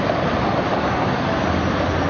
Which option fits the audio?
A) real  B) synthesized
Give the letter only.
A